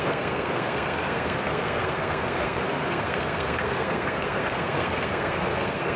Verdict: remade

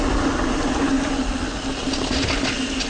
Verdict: recorded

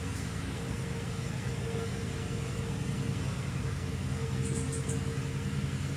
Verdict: remade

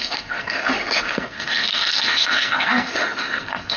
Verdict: remade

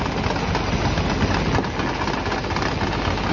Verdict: recorded